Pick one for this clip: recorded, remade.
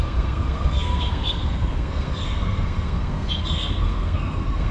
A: remade